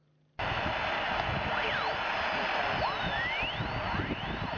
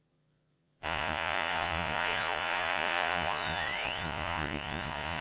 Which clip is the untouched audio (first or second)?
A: first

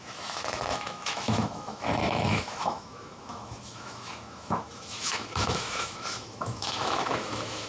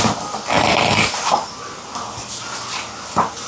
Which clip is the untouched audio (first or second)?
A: second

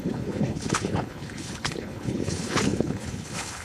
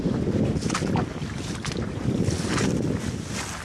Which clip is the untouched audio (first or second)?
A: second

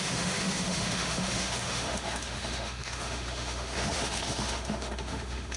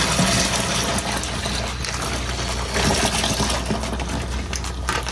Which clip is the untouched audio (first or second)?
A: second